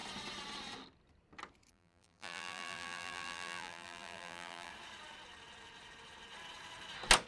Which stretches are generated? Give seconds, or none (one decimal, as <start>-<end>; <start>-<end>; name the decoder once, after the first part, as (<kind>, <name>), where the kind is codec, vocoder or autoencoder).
1.7-4.7 (vocoder, BigVGAN v2)